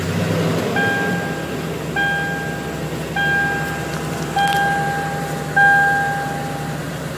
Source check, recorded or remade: recorded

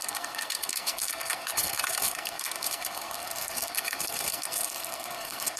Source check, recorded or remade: remade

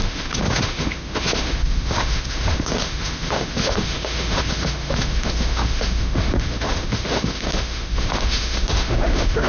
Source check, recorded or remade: remade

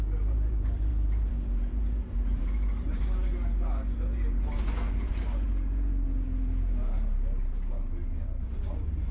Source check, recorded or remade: remade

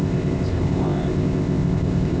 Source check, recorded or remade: remade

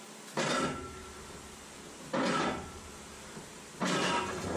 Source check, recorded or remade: recorded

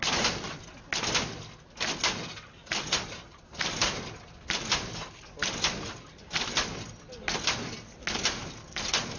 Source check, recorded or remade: recorded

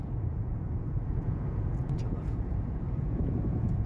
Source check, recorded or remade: remade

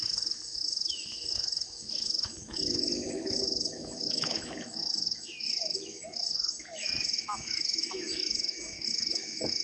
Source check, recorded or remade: remade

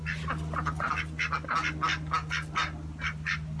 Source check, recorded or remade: recorded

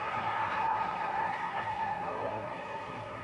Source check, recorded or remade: remade